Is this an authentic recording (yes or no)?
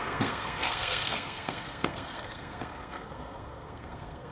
no